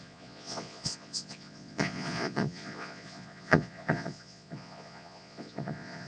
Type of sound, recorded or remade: remade